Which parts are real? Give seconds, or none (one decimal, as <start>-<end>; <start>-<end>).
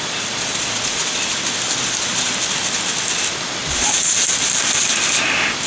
0.0-3.6; 5.0-5.7